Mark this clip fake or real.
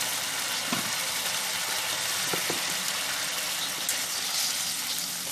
real